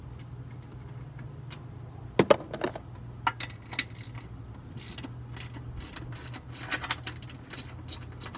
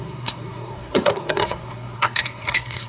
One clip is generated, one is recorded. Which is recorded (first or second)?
first